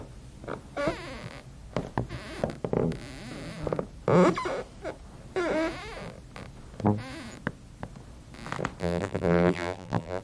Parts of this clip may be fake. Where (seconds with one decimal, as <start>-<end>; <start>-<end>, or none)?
8.8-10.2